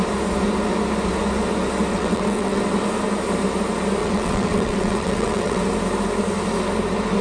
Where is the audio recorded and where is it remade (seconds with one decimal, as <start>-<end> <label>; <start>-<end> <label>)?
0.0-1.9 recorded; 1.9-2.6 remade; 2.6-4.0 recorded; 4.0-5.6 remade; 5.6-7.2 recorded